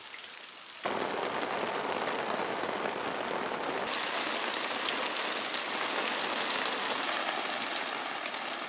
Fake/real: real